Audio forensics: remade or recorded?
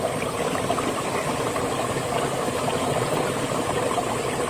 recorded